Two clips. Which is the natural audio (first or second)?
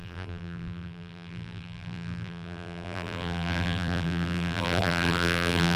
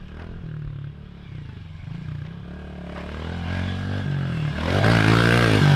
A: second